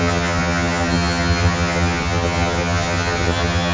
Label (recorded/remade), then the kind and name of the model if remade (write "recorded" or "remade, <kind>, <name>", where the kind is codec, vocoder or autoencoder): remade, vocoder, HiFi-GAN